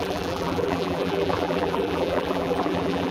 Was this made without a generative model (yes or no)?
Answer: no